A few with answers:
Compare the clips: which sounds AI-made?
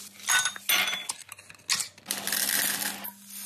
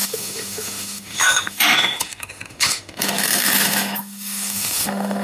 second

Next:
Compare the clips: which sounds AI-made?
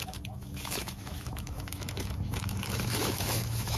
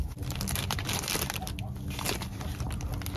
first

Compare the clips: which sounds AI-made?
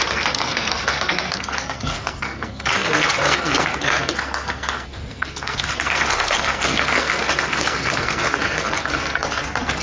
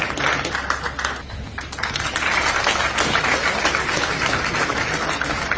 first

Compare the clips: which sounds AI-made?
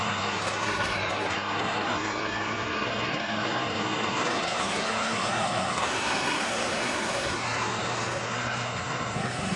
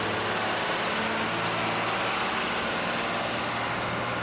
first